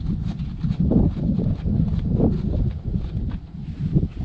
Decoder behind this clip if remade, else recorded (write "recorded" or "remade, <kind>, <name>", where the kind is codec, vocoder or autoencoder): recorded